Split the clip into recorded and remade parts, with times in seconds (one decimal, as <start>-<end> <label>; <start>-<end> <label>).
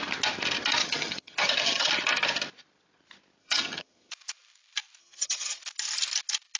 0.0-0.8 recorded; 0.8-1.9 remade; 1.9-3.4 recorded; 3.4-4.1 remade; 4.1-5.0 recorded; 5.0-5.6 remade; 5.6-6.6 recorded